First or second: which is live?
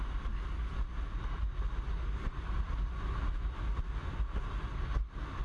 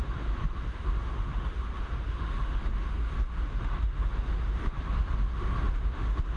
first